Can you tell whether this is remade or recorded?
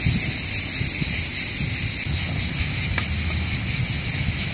recorded